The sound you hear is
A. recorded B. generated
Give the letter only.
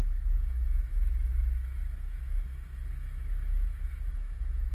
B